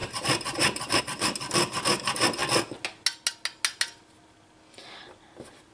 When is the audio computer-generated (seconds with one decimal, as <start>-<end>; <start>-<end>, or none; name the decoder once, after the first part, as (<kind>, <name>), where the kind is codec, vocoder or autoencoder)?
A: 0.0-1.0 (vocoder, BigVGAN v2)